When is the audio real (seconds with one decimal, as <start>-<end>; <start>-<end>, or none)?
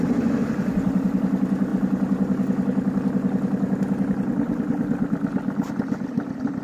0.0-6.6